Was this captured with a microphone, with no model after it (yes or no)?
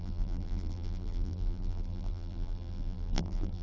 no